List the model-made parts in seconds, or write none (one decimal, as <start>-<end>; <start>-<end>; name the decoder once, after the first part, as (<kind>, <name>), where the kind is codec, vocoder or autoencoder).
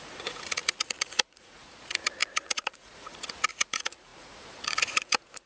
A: 0.0-5.5 (vocoder, Vocos)